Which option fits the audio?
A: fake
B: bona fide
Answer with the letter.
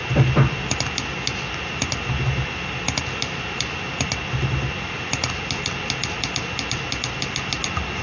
B